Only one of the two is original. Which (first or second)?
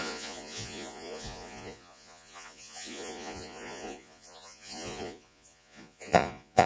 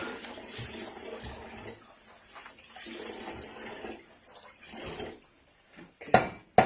second